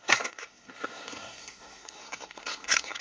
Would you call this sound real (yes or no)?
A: no